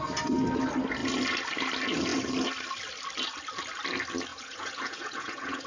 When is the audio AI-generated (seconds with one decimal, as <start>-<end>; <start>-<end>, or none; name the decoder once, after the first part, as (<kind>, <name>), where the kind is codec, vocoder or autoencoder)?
4.3-5.7 (vocoder, Vocos)